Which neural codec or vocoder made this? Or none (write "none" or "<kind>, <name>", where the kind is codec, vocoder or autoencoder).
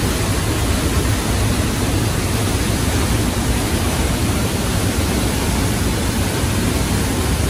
none